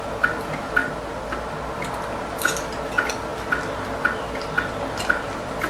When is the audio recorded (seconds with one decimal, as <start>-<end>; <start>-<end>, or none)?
0.0-5.7